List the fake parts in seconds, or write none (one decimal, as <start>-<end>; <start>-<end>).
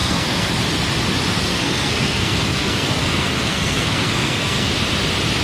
0.0-0.5; 1.5-4.7